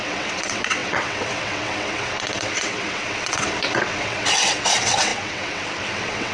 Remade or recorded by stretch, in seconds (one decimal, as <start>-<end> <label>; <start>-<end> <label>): 0.0-6.3 remade